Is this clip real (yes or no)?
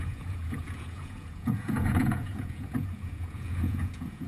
no